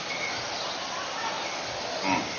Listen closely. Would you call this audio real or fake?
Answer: real